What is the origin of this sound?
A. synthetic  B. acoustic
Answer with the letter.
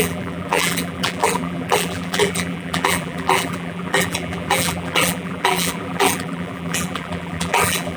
A